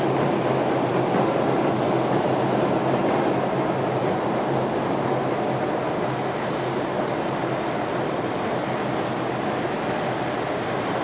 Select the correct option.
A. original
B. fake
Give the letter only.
A